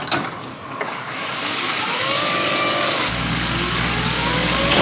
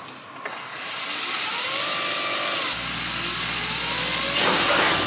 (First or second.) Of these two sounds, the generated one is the first